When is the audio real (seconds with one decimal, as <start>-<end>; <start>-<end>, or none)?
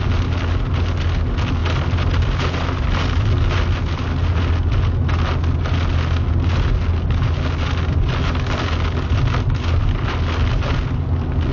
0.0-11.5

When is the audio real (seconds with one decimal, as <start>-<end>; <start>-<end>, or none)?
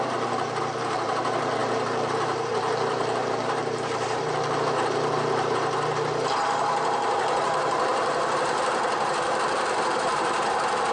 none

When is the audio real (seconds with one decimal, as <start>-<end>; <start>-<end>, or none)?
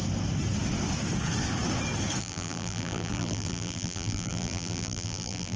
0.0-2.2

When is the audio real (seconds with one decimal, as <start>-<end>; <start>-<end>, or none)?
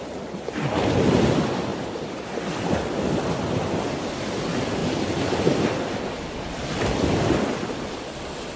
0.0-1.7; 2.4-8.6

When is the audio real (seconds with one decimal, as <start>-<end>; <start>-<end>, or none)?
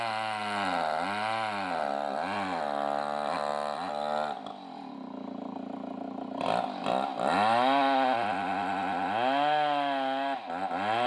0.0-11.1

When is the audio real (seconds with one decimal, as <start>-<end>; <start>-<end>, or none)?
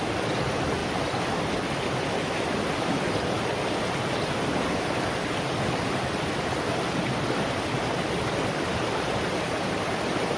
0.0-10.4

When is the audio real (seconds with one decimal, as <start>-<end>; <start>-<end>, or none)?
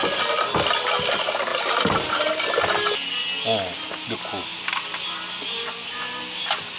0.0-1.5; 2.3-6.8